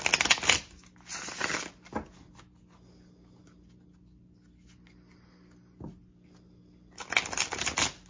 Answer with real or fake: real